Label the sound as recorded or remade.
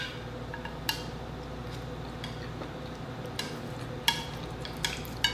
recorded